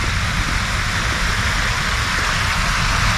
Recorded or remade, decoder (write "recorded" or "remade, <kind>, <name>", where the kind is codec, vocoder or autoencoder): recorded